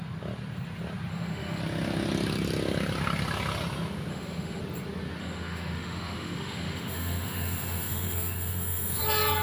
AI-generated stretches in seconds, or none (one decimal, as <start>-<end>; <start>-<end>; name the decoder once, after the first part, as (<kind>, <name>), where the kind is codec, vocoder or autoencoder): 1.1-1.6 (autoencoder, DAC-VAE); 4.1-4.6; 5.2-9.0

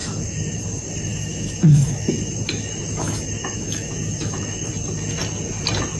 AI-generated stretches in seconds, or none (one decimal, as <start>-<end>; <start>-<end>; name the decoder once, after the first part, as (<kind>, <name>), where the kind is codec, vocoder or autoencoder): 0.0-0.6 (autoencoder, DAC-VAE); 1.1-4.7

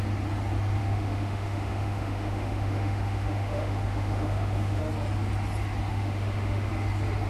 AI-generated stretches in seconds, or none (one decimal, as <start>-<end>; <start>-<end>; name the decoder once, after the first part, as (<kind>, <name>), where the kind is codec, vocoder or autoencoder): 0.8-4.8 (autoencoder, DAC-VAE); 5.9-6.7

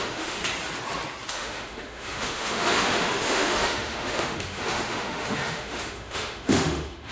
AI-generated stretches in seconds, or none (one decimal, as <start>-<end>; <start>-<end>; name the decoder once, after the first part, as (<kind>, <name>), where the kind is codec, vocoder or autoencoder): 0.0-0.4 (autoencoder, DAC-VAE); 1.3-7.1

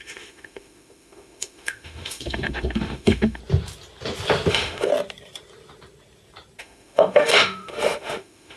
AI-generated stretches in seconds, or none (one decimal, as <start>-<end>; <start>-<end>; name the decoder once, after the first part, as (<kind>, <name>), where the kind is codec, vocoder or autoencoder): 0.0-3.4 (autoencoder, DAC-VAE); 4.5-4.9; 6.6-8.6